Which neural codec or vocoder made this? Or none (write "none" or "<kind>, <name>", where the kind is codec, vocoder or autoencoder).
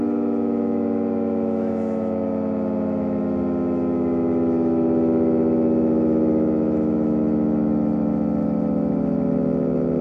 autoencoder, DAC-VAE